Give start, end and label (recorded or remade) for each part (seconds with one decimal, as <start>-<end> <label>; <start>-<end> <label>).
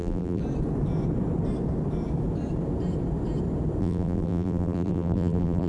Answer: 0.0-0.4 remade; 0.4-3.8 recorded; 3.8-5.7 remade